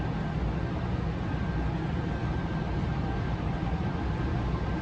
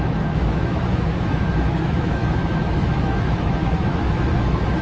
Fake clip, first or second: second